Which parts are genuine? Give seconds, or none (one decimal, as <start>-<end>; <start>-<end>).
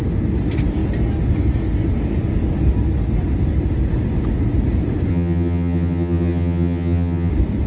0.0-5.1; 7.3-7.7